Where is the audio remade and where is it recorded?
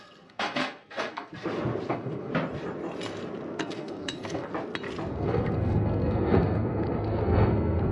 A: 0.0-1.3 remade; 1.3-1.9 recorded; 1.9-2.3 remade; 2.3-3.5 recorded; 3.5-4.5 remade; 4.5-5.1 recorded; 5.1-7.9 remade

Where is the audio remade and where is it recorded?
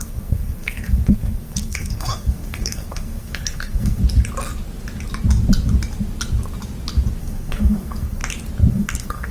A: 0.0-4.0 remade; 4.0-7.2 recorded; 7.2-8.2 remade; 8.2-8.7 recorded; 8.7-9.3 remade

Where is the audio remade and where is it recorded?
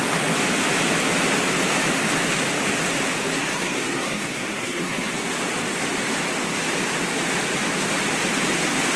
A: 0.0-3.4 recorded; 3.4-5.1 remade; 5.1-9.0 recorded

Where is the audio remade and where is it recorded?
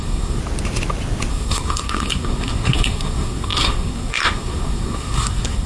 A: 0.0-0.4 remade; 0.4-1.3 recorded; 1.3-5.7 remade